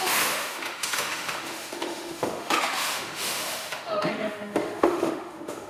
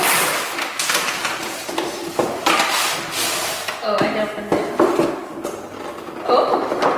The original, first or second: second